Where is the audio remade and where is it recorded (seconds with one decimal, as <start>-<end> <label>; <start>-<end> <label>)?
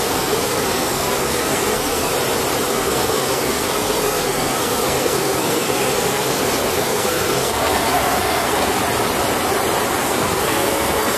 0.0-2.1 remade; 2.1-2.7 recorded; 2.7-8.8 remade; 8.8-10.0 recorded; 10.0-11.2 remade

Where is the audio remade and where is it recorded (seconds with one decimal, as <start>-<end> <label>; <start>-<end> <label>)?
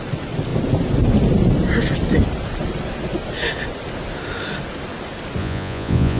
0.0-5.4 recorded; 5.4-6.2 remade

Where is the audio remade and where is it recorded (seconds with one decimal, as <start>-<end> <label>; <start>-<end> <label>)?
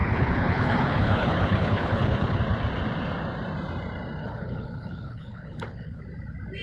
0.0-2.4 remade; 2.4-4.2 recorded; 4.2-6.0 remade; 6.0-6.6 recorded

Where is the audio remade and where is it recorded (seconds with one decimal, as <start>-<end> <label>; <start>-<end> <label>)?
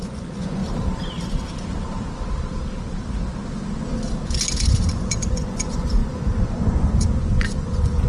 0.0-0.6 remade; 0.6-4.9 recorded; 4.9-8.1 remade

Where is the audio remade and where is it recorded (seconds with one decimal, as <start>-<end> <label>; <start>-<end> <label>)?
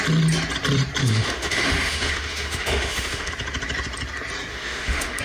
0.0-1.0 recorded; 1.0-3.3 remade; 3.3-4.5 recorded; 4.5-5.2 remade